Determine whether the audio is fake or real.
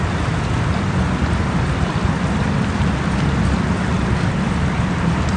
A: real